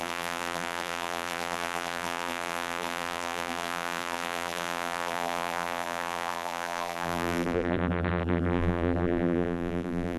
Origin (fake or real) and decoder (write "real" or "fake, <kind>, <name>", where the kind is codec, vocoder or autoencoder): fake, vocoder, BigVGAN v2